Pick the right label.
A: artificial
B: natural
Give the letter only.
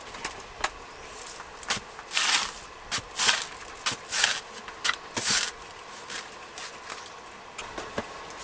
B